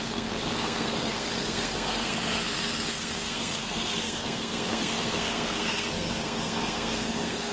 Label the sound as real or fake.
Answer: fake